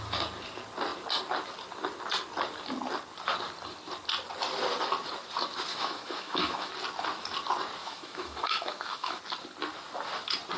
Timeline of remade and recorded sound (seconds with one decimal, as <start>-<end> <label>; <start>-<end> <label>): 0.0-5.7 recorded; 5.7-6.7 remade; 6.7-7.8 recorded; 7.8-9.2 remade; 9.2-10.6 recorded